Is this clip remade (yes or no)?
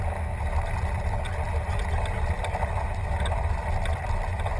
no